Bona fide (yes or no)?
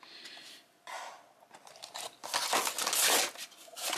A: yes